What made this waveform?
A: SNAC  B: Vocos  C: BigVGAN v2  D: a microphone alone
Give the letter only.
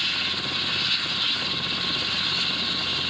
D